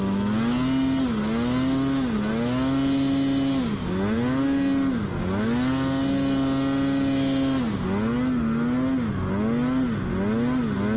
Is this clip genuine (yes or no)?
yes